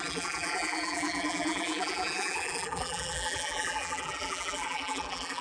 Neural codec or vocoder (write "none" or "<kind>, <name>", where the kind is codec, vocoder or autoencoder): vocoder, BigVGAN v2